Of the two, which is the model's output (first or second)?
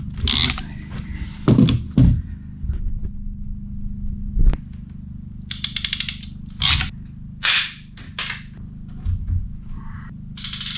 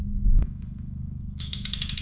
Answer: second